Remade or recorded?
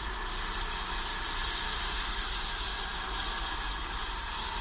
recorded